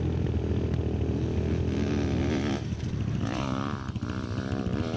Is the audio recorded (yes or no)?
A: yes